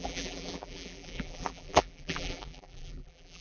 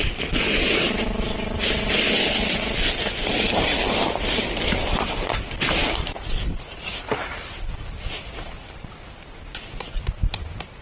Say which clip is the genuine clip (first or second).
second